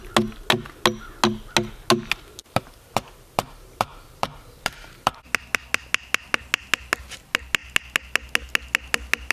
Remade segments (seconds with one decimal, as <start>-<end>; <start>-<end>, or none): 2.4-5.2